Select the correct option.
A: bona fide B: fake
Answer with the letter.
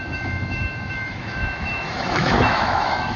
B